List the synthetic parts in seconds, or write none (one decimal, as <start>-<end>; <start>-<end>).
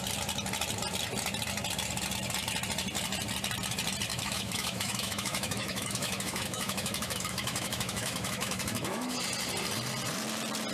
4.1-9.2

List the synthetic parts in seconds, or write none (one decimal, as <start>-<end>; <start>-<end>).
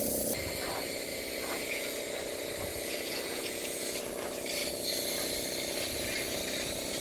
1.1-2.0; 2.7-4.0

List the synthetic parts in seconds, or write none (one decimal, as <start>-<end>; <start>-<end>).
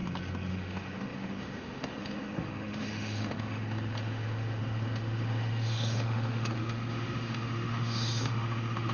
0.5-8.9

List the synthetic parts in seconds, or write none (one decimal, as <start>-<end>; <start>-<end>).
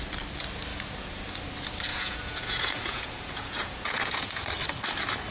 0.7-1.2; 1.9-4.4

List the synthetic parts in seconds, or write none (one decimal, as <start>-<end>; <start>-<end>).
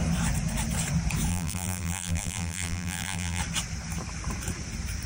1.3-3.4